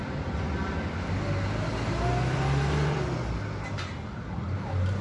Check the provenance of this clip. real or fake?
real